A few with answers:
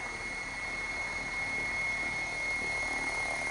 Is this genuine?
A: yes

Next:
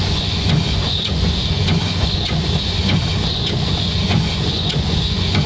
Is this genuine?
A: no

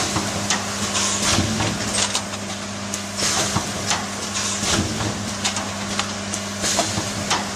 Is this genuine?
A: yes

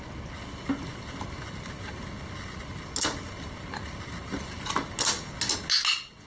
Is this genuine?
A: yes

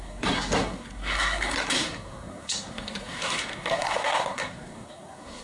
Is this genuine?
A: no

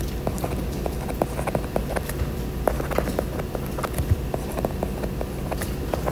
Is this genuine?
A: yes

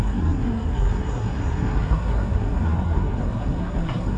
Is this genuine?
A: no